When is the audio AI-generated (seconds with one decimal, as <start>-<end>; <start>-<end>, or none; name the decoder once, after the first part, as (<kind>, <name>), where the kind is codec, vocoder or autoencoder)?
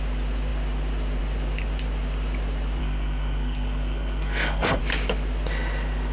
2.8-4.8 (codec, SNAC)